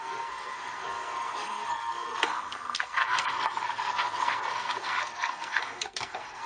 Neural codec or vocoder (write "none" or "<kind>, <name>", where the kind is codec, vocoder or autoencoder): codec, SNAC